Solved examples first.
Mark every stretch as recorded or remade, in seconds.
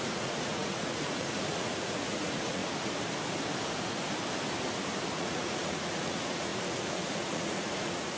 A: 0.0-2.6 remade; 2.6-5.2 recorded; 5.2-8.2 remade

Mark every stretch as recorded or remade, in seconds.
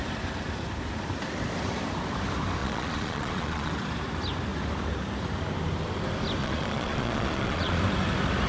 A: 0.0-2.6 recorded; 2.6-3.7 remade; 3.7-6.4 recorded; 6.4-7.8 remade; 7.8-8.5 recorded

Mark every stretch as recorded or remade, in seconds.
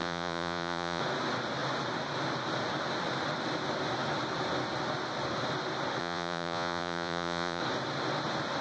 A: 0.0-1.0 remade; 1.0-6.0 recorded; 6.0-7.6 remade; 7.6-8.6 recorded